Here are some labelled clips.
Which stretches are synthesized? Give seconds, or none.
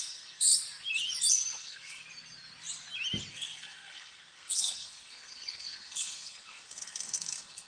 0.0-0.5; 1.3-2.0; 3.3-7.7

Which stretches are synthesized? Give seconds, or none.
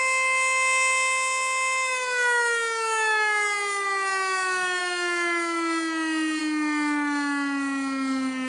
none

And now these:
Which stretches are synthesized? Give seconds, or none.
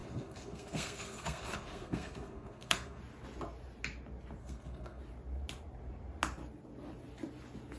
0.0-3.0; 4.4-5.0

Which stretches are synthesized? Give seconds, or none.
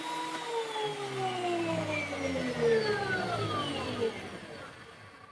none